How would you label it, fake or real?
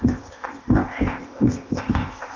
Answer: fake